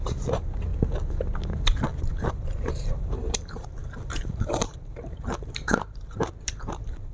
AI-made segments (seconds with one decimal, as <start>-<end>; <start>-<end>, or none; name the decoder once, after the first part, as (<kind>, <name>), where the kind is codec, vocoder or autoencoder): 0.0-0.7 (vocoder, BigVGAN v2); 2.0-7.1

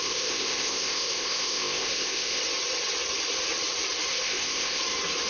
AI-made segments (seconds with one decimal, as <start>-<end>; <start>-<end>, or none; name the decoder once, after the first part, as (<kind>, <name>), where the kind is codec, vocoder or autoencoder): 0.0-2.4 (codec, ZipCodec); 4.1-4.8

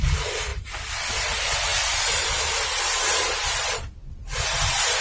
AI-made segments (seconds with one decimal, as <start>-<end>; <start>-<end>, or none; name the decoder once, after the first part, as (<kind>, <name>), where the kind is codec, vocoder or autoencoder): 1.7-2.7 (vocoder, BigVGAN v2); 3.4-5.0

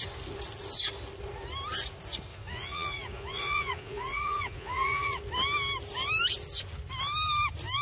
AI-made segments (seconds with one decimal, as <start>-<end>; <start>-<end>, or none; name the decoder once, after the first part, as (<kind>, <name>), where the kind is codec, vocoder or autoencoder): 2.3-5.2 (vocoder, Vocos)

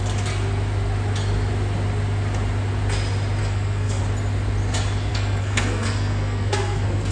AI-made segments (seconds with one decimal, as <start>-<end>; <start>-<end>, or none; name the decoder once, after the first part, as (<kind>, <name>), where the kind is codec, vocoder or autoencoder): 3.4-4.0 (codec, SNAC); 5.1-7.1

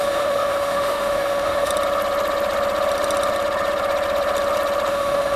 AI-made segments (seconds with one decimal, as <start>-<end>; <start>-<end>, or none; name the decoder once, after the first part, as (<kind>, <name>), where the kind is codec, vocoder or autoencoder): 0.0-1.7 (autoencoder, DAC-VAE); 4.9-5.4

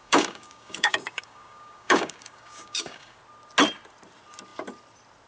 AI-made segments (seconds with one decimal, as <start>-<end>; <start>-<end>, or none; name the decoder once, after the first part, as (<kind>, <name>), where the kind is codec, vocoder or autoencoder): 0.0-3.2 (codec, DAC)

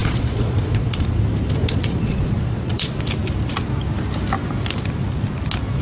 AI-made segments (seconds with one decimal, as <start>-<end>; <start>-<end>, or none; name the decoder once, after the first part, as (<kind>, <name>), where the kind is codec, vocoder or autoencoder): 0.0-1.2 (vocoder, Vocos); 1.6-2.9